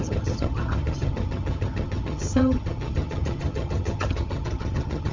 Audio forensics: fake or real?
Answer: fake